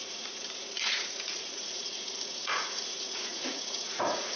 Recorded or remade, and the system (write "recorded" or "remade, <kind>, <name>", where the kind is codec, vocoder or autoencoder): remade, vocoder, Vocos